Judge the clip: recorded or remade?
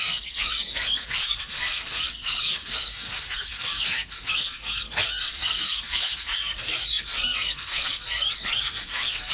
remade